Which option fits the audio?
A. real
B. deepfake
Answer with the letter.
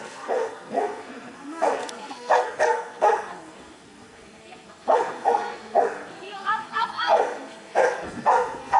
B